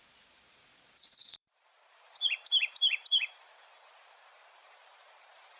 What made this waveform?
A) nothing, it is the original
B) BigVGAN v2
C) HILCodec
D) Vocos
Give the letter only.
B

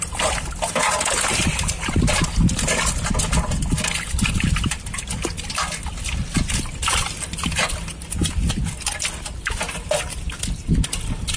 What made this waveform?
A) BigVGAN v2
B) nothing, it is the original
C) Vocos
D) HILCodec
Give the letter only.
B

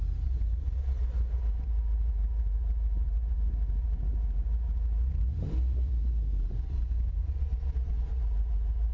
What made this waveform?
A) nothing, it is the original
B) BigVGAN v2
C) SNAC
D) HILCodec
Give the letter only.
B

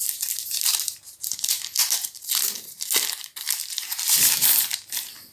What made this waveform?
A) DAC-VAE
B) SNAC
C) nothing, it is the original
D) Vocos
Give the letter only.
C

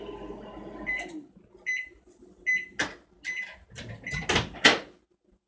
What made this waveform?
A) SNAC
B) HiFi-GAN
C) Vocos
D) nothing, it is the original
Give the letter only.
D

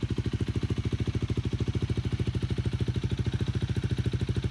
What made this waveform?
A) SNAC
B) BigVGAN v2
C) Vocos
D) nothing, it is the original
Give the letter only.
D